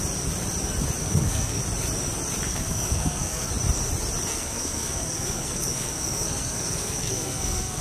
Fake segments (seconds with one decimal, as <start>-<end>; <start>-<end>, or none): 1.0-1.6; 2.5-3.5; 4.3-7.8